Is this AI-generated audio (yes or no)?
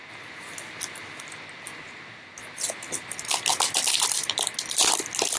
no